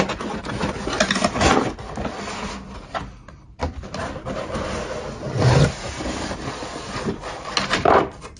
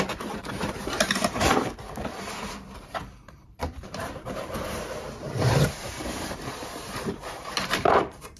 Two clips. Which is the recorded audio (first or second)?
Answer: first